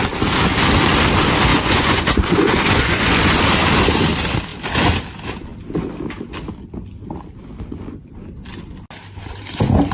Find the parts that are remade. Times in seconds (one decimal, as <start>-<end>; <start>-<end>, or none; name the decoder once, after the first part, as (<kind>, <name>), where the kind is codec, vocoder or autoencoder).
1.5-3.4 (vocoder, Vocos)